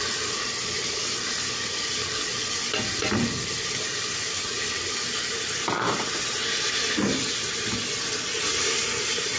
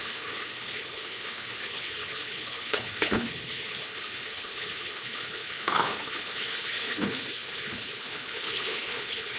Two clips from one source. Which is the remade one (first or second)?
second